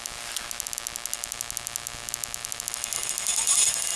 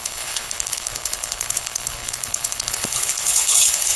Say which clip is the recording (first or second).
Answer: first